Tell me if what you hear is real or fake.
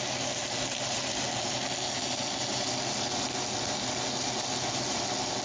real